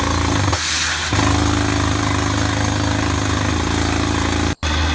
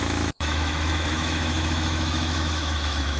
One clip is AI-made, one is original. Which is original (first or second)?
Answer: first